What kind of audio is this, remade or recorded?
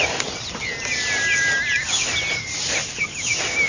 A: recorded